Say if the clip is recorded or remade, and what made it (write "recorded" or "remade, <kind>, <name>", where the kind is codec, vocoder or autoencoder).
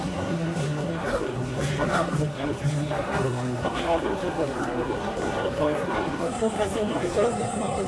remade, codec, SNAC